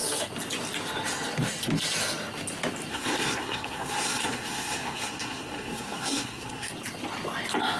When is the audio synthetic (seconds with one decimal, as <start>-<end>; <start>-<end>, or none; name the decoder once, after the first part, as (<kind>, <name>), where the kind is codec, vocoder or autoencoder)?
2.9-6.7 (codec, SNAC)